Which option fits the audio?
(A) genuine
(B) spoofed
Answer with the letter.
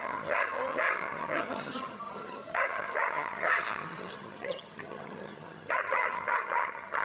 B